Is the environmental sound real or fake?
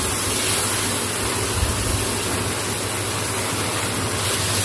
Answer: real